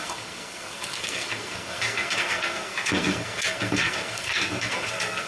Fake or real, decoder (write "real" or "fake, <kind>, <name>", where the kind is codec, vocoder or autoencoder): fake, codec, SNAC